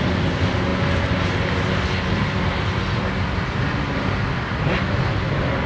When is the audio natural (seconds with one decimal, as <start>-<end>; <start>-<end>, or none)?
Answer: 0.0-5.7